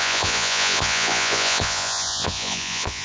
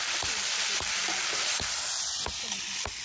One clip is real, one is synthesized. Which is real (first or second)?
second